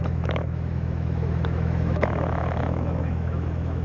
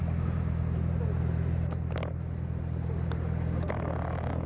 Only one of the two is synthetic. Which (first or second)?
first